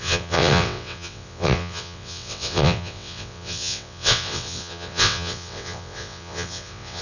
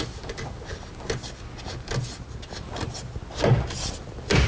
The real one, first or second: second